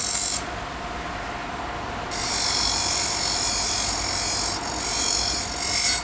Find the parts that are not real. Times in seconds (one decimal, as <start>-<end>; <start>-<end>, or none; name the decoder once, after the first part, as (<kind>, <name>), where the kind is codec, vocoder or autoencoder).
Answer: none